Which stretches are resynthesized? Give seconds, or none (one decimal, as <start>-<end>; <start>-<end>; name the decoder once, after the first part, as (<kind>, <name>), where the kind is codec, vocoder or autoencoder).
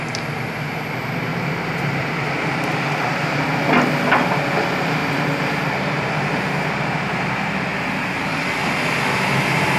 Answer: 1.3-3.5 (vocoder, BigVGAN v2); 5.0-6.7; 7.7-8.5